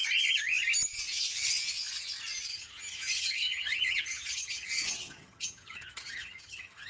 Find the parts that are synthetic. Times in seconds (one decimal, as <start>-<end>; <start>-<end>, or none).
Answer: 2.5-6.9

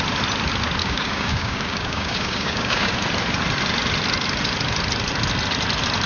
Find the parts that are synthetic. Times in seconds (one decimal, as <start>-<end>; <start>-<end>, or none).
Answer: 0.8-2.9